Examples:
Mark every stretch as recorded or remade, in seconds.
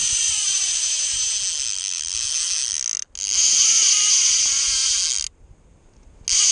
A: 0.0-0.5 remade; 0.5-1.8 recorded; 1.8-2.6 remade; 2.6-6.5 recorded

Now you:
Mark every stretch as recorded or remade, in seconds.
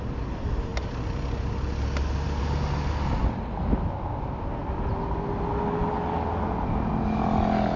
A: 0.0-7.8 recorded